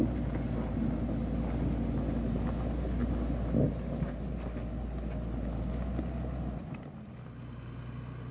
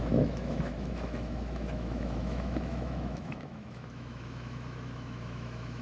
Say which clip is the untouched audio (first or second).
first